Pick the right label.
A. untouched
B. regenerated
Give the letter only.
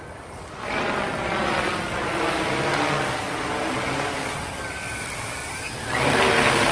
A